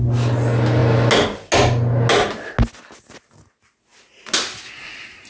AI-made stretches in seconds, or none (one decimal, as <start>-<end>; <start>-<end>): none